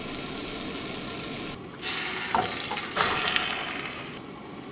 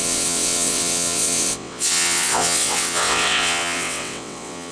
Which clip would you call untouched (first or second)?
first